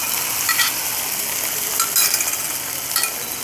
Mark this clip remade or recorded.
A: recorded